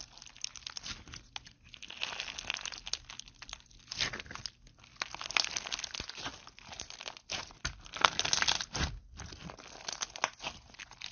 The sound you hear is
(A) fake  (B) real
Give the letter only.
B